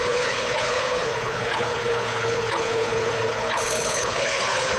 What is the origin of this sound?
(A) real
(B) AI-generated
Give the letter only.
B